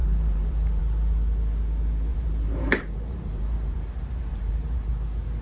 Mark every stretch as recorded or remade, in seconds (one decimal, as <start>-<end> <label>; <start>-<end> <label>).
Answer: 0.0-0.8 remade; 0.8-2.1 recorded; 2.1-4.9 remade; 4.9-5.4 recorded